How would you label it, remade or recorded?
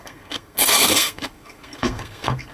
remade